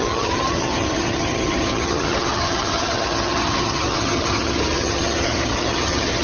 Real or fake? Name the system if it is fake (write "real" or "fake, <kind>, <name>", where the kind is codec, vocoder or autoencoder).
fake, vocoder, HiFi-GAN